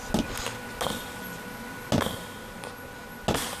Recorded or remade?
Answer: recorded